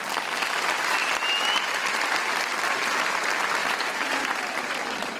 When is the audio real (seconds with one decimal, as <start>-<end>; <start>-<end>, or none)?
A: 0.0-3.6; 4.8-5.2